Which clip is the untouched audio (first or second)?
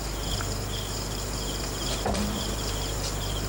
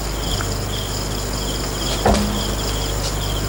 second